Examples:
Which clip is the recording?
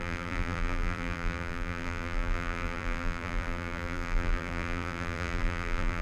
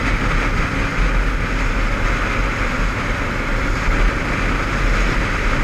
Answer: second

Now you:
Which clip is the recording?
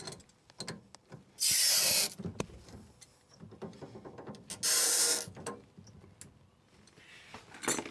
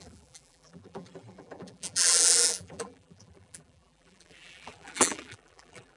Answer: first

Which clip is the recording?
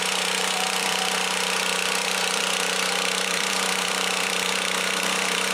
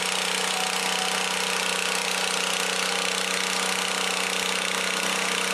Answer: second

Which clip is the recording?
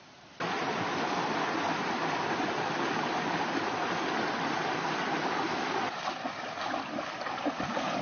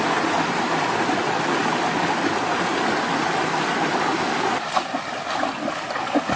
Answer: second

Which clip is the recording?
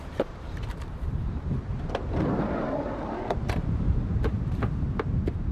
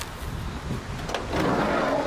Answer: second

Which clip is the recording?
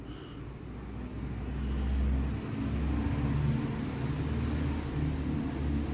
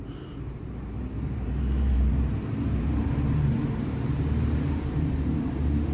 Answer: first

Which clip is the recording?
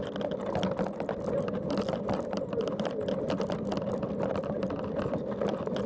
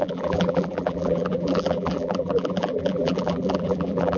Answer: first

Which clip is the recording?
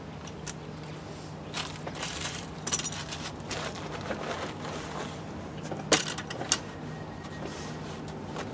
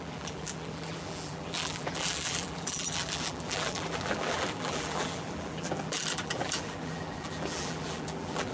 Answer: first